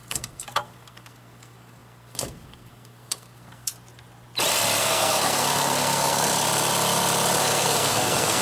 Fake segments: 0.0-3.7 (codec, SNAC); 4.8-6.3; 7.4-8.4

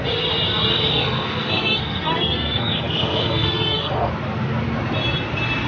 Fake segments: 0.7-4.1 (codec, SNAC)

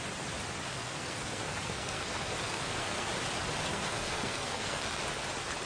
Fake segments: 0.7-3.1 (codec, SNAC); 3.7-5.0

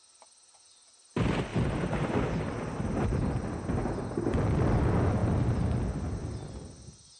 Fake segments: none